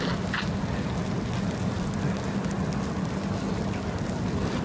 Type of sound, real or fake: real